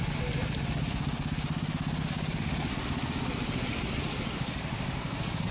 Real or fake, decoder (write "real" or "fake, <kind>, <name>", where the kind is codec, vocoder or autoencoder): real